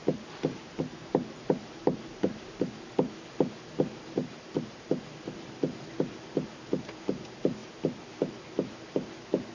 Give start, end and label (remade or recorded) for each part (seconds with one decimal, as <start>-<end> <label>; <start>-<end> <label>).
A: 0.0-1.7 remade; 1.7-4.2 recorded; 4.2-4.9 remade; 4.9-9.5 recorded